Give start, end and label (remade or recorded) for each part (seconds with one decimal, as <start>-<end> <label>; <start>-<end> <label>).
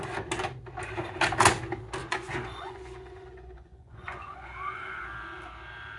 0.0-2.0 recorded; 2.0-5.0 remade; 5.0-6.0 recorded